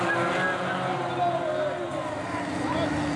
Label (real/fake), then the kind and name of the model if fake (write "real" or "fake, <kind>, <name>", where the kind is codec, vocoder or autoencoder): real